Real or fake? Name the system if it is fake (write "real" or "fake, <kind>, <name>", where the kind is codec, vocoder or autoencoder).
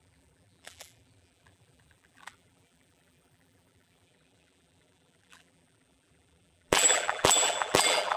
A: fake, vocoder, BigVGAN v2